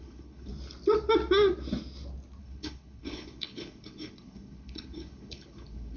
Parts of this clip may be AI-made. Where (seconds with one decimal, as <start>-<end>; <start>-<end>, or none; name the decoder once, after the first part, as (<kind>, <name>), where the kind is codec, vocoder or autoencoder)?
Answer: 0.0-0.5 (codec, HILCodec); 2.4-6.0